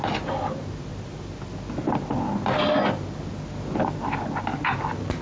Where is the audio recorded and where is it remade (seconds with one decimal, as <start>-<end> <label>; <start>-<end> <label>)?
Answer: 0.0-5.2 recorded